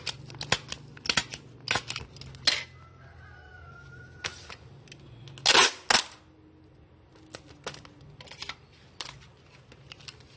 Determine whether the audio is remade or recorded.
recorded